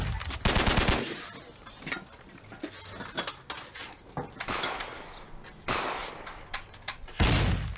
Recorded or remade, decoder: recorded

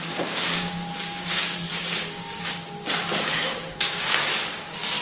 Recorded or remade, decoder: remade, codec, DAC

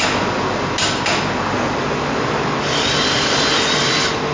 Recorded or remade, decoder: recorded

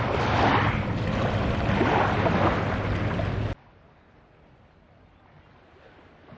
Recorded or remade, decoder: recorded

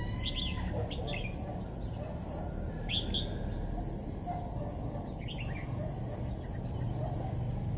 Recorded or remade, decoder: recorded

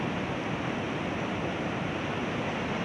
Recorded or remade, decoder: recorded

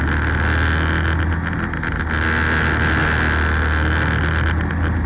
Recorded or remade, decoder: recorded